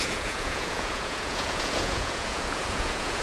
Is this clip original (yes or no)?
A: no